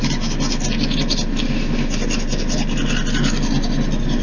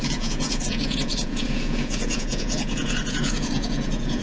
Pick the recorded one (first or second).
first